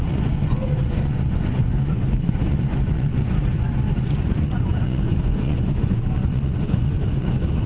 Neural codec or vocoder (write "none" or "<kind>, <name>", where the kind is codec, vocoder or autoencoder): vocoder, Vocos